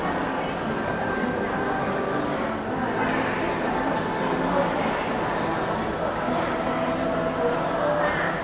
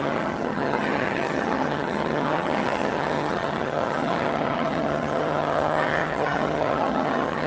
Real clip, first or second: first